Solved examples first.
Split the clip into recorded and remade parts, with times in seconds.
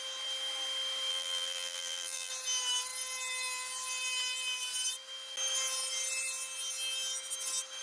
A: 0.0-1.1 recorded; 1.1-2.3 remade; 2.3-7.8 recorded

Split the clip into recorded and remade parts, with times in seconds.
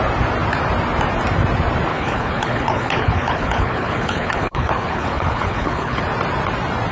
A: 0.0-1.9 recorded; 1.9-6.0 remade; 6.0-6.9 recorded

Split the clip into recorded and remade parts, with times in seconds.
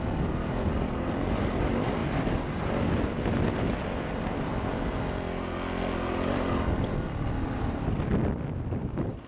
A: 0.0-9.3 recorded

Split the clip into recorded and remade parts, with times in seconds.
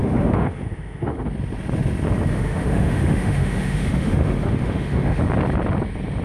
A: 0.0-1.3 remade; 1.3-2.3 recorded; 2.3-5.2 remade; 5.2-6.2 recorded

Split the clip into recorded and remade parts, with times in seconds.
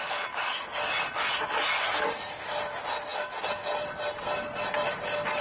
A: 0.0-5.4 recorded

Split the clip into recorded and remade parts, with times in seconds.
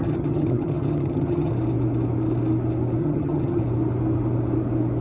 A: 0.0-1.5 remade; 1.5-3.0 recorded; 3.0-3.6 remade; 3.6-5.0 recorded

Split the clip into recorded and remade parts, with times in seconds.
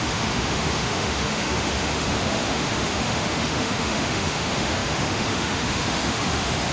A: 0.0-6.7 remade